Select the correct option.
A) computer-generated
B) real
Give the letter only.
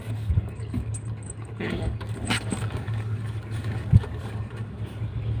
A